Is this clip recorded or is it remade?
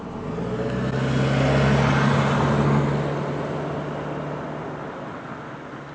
recorded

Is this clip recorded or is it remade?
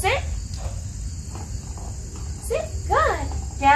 recorded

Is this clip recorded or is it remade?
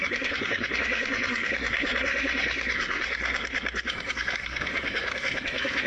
remade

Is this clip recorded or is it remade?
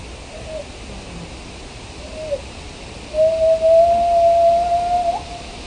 recorded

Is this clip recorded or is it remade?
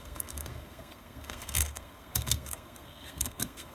remade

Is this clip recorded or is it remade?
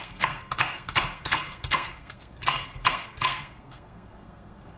remade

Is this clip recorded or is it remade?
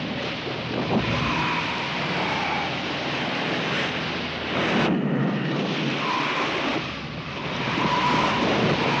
recorded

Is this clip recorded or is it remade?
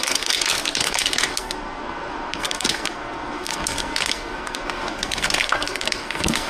remade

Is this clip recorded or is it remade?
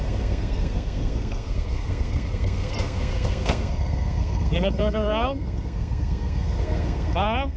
remade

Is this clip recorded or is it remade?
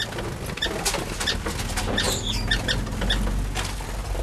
recorded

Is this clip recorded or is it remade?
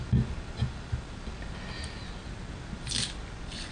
recorded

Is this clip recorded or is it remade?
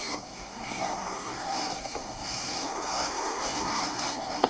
remade